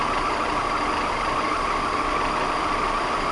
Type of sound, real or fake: real